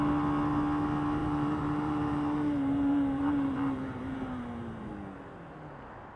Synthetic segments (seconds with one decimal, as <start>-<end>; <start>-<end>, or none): 1.2-4.9

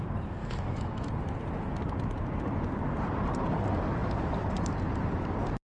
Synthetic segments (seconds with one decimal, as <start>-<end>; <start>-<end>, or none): 0.4-1.1

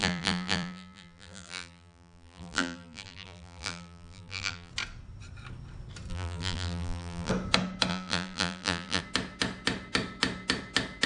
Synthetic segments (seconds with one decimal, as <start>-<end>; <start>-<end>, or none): 0.0-4.7; 6.1-7.3; 7.9-9.0